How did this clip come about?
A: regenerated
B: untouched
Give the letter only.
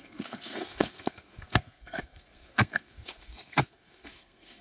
A